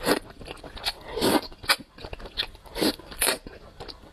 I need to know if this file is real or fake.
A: real